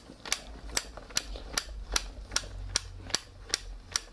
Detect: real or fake real